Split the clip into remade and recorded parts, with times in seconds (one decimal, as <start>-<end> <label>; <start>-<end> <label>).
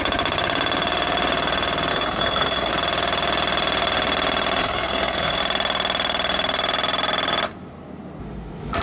0.0-1.9 recorded; 1.9-2.7 remade; 2.7-4.6 recorded; 4.6-5.4 remade; 5.4-8.8 recorded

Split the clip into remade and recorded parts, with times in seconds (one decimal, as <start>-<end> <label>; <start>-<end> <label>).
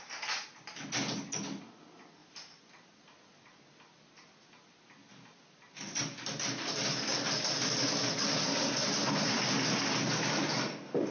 0.0-11.1 recorded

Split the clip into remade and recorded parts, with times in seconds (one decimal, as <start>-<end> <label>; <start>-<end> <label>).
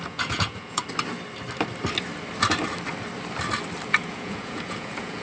0.0-0.8 remade; 0.8-3.9 recorded; 3.9-5.2 remade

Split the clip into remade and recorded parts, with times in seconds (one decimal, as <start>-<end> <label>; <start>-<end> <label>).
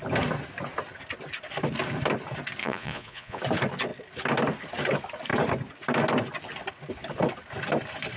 0.0-2.6 recorded; 2.6-3.4 remade; 3.4-8.2 recorded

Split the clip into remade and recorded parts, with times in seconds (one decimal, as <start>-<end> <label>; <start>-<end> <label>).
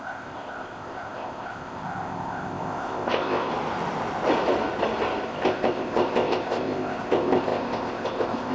0.0-3.5 remade; 3.5-5.3 recorded; 5.3-8.5 remade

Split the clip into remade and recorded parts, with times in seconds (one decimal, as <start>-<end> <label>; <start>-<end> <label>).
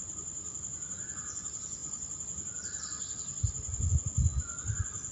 0.0-5.1 recorded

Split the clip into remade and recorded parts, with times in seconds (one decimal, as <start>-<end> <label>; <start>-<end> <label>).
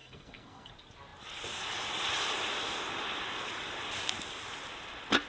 0.0-0.7 remade; 0.7-5.3 recorded